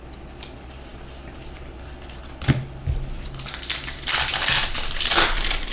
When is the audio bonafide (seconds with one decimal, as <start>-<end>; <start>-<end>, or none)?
0.0-5.7